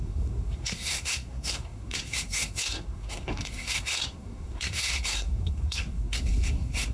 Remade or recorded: remade